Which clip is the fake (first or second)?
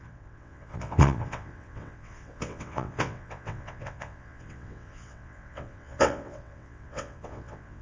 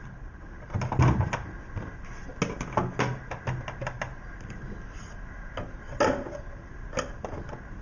first